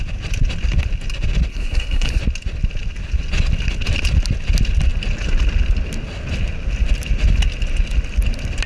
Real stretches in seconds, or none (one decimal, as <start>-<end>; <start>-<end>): 0.0-1.5; 2.2-8.7